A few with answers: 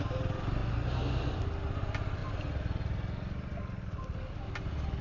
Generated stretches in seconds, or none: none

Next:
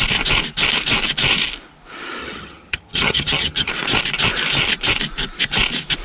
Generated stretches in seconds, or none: 2.2-3.7 (vocoder, HiFi-GAN)

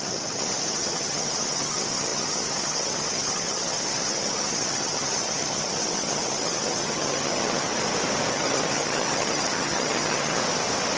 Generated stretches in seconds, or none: 0.0-7.7 (vocoder, HiFi-GAN); 8.3-10.4

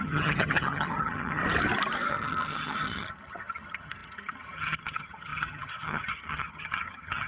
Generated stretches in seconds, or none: 0.0-1.4 (vocoder, HiFi-GAN); 2.1-7.3